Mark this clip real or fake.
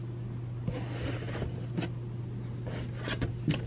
real